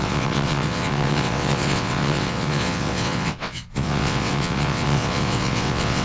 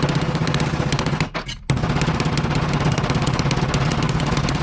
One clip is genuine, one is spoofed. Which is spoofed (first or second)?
first